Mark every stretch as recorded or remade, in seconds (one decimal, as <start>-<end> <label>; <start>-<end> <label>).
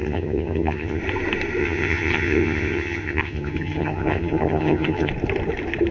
0.0-1.0 remade; 1.0-1.6 recorded; 1.6-5.1 remade; 5.1-5.9 recorded